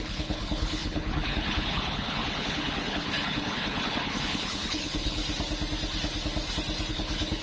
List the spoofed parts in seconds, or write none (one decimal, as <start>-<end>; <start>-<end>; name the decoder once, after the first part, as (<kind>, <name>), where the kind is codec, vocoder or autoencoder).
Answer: 0.0-5.2 (codec, HILCodec); 6.9-7.4